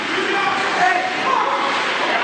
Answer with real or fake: real